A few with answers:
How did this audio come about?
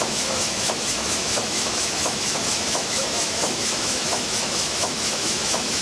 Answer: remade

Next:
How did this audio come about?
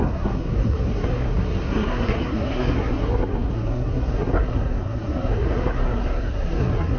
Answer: remade